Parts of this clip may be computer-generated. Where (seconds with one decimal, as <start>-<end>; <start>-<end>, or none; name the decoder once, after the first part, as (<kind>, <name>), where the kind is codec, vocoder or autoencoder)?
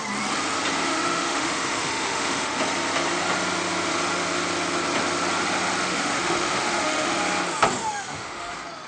0.9-2.6 (autoencoder, DAC-VAE); 5.8-7.2; 7.8-8.5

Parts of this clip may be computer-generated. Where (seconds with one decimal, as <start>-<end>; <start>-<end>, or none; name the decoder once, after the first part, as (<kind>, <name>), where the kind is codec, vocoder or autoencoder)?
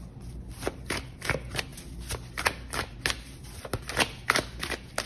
none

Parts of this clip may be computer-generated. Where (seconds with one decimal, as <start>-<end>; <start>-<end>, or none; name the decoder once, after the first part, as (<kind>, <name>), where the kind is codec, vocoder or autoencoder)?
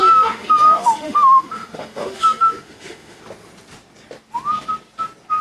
0.0-3.2 (autoencoder, DAC-VAE)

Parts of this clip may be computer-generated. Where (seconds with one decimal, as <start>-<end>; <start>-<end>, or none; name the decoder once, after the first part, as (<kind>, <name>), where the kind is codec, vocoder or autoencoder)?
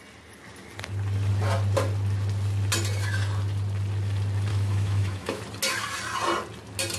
4.5-5.4 (autoencoder, DAC-VAE)